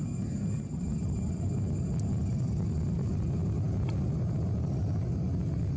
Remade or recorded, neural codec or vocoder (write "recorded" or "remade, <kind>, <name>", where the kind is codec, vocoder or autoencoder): recorded